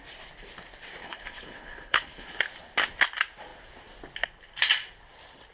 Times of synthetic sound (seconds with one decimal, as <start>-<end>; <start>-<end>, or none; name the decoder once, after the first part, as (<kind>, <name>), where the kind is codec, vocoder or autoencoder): 1.0-2.4 (codec, HILCodec)